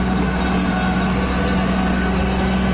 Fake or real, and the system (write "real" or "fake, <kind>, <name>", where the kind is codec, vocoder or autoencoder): real